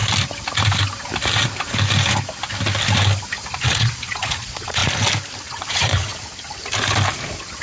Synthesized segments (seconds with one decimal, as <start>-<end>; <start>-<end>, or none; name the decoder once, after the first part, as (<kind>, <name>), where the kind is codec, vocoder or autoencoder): 3.5-4.8 (vocoder, Vocos); 5.4-6.1